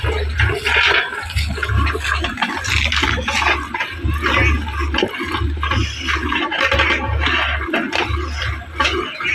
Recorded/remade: recorded